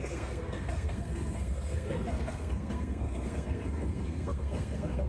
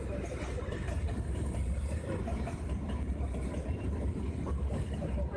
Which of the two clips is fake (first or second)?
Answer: first